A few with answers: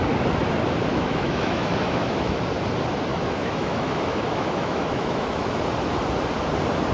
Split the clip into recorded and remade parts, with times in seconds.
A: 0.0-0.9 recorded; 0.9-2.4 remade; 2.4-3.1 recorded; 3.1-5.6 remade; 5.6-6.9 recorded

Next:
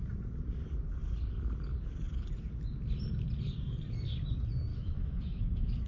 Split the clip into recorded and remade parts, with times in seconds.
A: 0.0-4.7 recorded; 4.7-5.9 remade

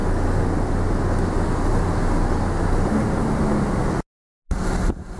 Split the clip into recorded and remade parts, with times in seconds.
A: 0.0-5.2 recorded

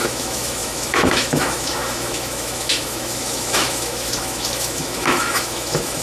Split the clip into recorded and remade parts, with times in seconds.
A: 0.0-6.0 remade

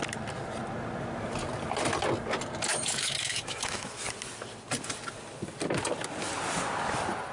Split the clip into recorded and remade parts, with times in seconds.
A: 0.0-2.7 recorded; 2.7-3.9 remade; 3.9-7.3 recorded

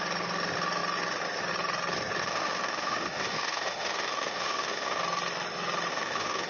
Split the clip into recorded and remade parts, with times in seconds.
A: 0.0-2.2 recorded; 2.2-5.0 remade; 5.0-5.9 recorded; 5.9-6.5 remade

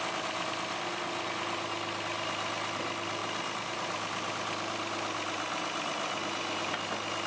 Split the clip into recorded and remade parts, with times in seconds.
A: 0.0-7.3 recorded